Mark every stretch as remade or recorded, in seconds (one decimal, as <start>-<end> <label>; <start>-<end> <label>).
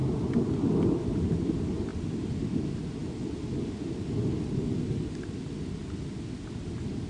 0.0-7.1 recorded